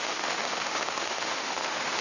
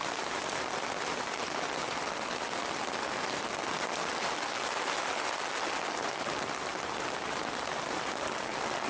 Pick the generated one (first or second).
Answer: first